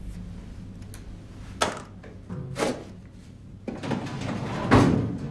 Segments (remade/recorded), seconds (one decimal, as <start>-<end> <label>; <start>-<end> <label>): 0.0-5.3 recorded